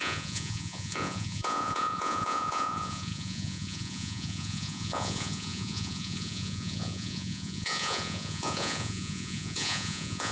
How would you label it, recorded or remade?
remade